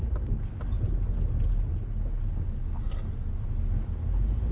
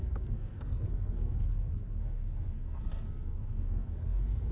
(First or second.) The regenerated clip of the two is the second